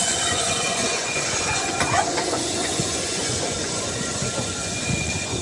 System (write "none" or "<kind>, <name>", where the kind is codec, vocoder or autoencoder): vocoder, Vocos